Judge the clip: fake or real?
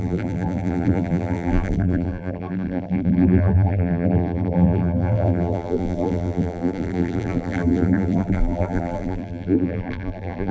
fake